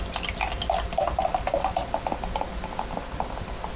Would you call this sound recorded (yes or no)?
yes